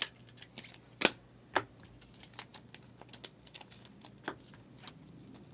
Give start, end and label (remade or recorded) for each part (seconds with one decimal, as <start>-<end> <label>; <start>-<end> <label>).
0.0-5.5 recorded